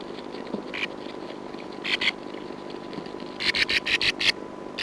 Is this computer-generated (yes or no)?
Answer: no